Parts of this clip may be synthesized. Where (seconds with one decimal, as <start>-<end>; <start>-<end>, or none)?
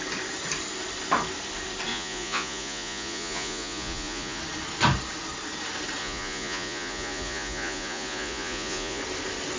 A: 1.9-4.4; 6.0-9.0